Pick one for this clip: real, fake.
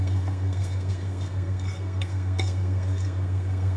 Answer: fake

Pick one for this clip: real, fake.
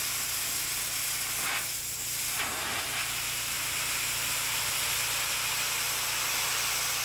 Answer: real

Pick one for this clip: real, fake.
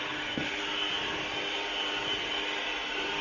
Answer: real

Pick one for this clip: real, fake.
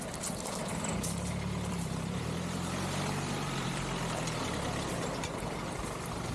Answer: fake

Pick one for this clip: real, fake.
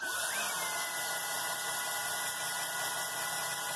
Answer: real